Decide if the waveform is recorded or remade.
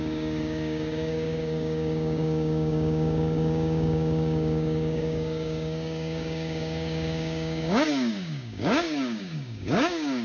remade